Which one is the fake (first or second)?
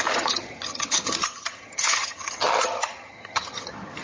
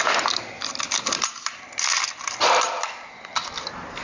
first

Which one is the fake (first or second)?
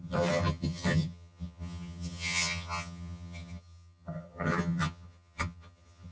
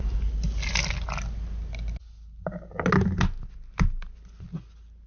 first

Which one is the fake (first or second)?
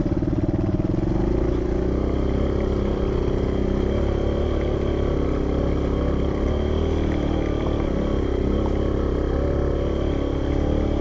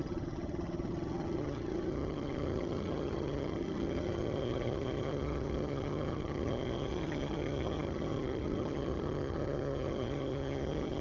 second